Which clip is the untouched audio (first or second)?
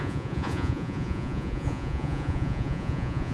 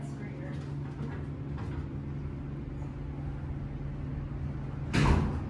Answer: second